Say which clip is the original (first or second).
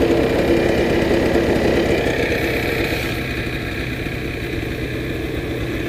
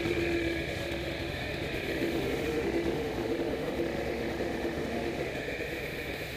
first